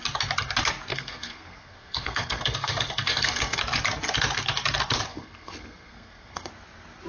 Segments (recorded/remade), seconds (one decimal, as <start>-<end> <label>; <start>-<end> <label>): 0.0-0.9 recorded; 0.9-3.6 remade; 3.6-5.1 recorded; 5.1-6.5 remade; 6.5-7.1 recorded